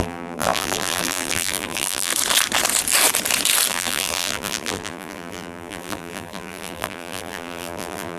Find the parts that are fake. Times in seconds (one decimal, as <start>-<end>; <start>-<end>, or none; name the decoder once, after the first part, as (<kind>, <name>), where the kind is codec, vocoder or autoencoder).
0.0-2.1 (vocoder, BigVGAN v2); 3.7-8.2